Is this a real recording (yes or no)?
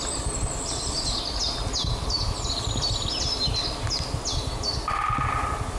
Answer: yes